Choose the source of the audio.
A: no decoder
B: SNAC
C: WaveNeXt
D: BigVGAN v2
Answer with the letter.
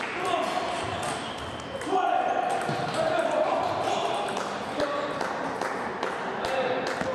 A